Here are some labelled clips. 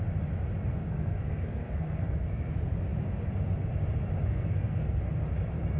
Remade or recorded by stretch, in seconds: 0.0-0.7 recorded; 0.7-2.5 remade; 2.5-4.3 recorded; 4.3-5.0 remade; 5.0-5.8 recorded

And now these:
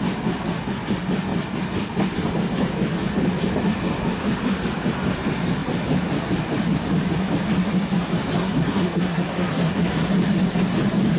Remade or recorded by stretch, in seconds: 0.0-8.4 recorded; 8.4-10.1 remade; 10.1-11.2 recorded

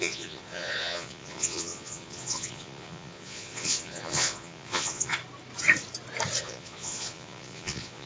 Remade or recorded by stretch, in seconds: 0.0-5.2 remade; 5.2-6.4 recorded; 6.4-8.1 remade

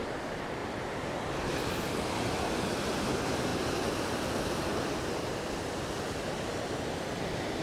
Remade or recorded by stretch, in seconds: 0.0-0.6 recorded; 0.6-1.3 remade; 1.3-3.5 recorded; 3.5-5.4 remade; 5.4-7.6 recorded

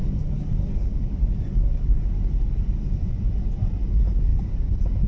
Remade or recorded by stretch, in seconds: 0.0-5.1 recorded

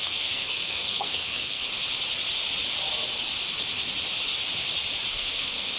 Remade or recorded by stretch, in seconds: 0.0-1.6 remade; 1.6-5.1 recorded; 5.1-5.8 remade

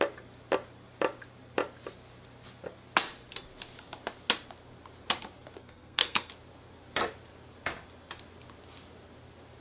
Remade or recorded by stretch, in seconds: 0.0-5.6 recorded; 5.6-6.3 remade; 6.3-9.6 recorded

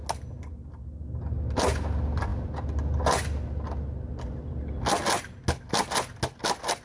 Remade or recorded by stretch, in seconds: 0.0-6.8 recorded